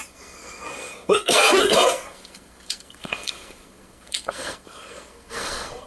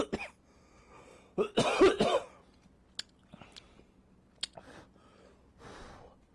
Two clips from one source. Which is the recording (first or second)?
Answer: second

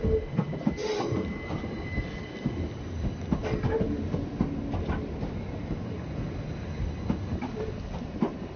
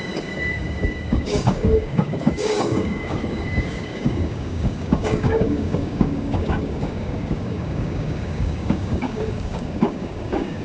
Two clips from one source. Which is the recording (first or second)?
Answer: first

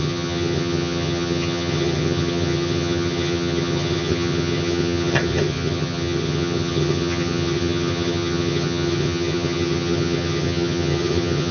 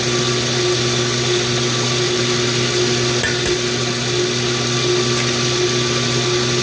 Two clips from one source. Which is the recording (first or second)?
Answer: second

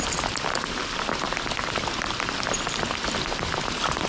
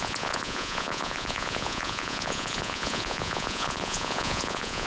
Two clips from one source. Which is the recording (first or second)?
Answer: first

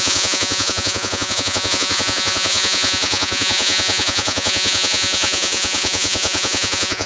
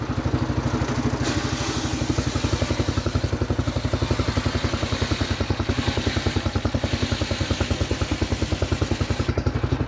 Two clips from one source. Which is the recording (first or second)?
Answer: second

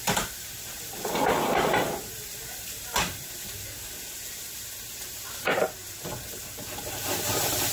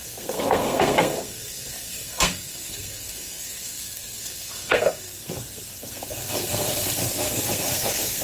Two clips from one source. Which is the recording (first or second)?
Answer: first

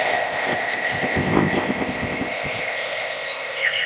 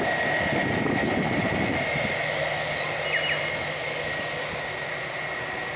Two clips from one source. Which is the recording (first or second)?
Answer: second